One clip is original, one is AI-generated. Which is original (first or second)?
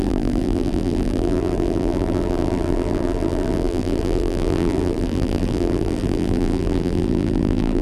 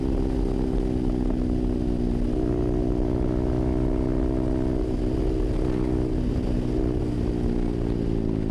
second